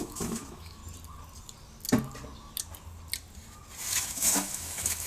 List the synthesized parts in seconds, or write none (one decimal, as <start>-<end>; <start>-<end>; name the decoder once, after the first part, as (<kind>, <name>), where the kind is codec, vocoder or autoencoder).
0.0-0.8 (autoencoder, DAC-VAE); 3.9-5.1